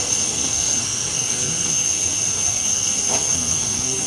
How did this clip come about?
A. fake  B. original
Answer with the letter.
A